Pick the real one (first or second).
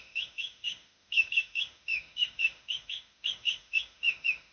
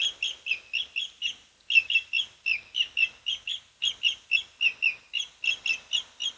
second